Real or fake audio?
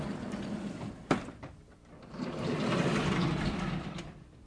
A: fake